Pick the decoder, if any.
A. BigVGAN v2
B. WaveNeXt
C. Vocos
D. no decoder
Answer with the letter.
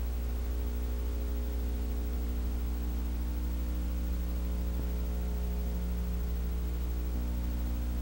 D